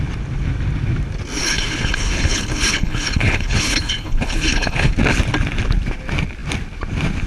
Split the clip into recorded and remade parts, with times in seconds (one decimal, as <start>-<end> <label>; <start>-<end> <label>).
0.0-1.4 recorded; 1.4-4.9 remade; 4.9-7.3 recorded